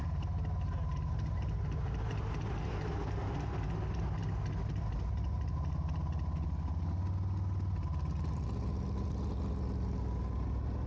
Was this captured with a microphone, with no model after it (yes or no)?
yes